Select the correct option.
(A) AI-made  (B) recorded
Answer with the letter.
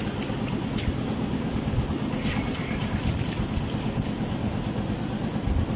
B